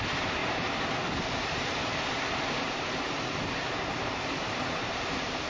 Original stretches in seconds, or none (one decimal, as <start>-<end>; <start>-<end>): none